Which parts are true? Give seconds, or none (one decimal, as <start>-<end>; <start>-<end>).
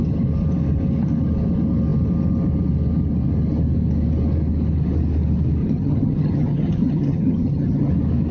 0.0-5.6; 7.9-8.3